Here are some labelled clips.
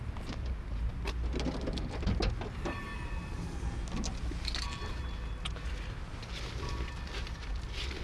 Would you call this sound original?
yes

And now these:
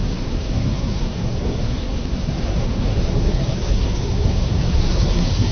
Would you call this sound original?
no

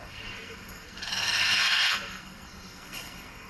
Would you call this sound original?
no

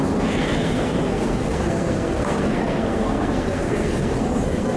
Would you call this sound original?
no